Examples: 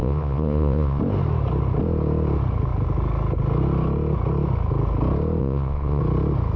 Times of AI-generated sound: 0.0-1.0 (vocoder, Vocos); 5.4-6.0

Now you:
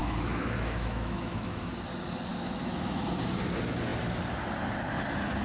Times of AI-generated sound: 0.0-1.7 (autoencoder, DAC-VAE); 2.3-3.0

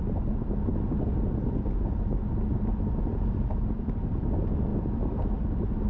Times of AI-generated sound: none